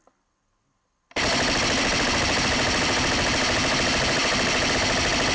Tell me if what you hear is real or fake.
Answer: real